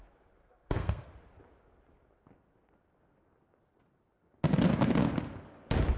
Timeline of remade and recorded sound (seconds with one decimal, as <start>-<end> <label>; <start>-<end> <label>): 0.0-0.4 recorded; 0.4-1.1 remade; 1.1-6.0 recorded